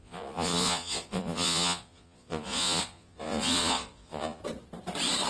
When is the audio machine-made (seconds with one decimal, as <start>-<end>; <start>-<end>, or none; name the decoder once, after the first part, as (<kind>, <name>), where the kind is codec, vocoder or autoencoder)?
0.0-4.4 (vocoder, Vocos)